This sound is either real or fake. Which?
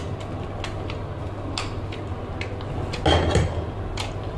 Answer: real